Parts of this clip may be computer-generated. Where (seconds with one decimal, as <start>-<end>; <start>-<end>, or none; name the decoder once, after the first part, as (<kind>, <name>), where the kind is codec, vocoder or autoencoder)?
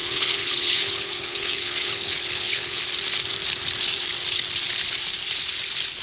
0.0-2.8 (codec, HILCodec)